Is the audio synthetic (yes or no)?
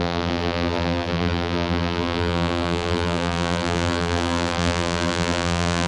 yes